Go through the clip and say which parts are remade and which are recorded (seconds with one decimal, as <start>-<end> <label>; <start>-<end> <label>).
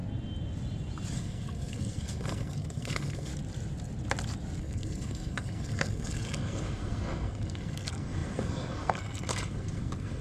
0.0-1.1 recorded; 1.1-3.3 remade; 3.3-4.6 recorded; 4.6-10.2 remade